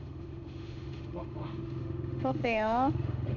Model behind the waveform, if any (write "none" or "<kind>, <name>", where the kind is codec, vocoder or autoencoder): autoencoder, DAC-VAE